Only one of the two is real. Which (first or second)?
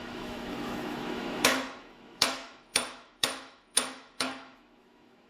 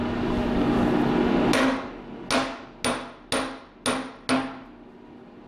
second